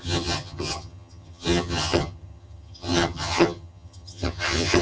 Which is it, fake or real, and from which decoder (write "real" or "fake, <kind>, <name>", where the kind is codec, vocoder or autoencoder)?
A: fake, vocoder, HiFi-GAN